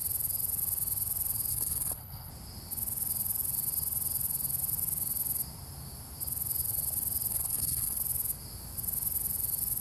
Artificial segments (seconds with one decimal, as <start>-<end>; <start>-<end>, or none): 1.5-2.3; 7.3-8.0